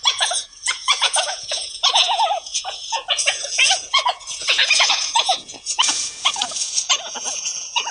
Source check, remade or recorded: remade